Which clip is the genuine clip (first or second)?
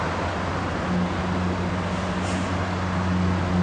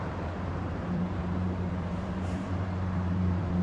first